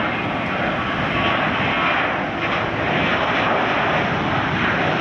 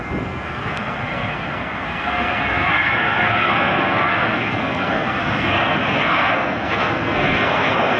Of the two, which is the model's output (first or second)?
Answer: second